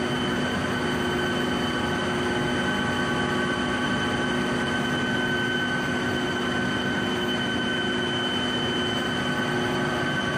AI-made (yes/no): no